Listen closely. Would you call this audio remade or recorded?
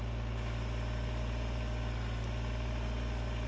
recorded